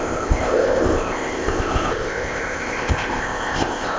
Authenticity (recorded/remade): remade